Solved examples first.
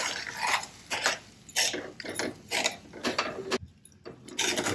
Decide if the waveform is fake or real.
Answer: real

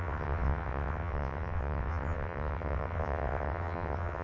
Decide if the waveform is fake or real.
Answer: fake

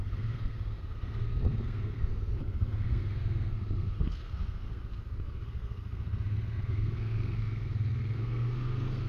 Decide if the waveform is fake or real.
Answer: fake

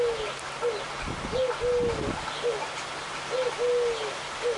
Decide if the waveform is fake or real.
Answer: real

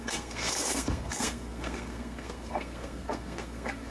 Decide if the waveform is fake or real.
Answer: fake